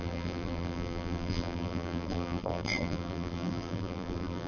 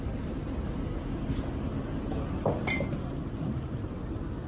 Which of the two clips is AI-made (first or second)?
first